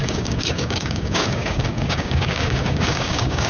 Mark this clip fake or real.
fake